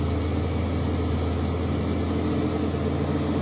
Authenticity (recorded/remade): recorded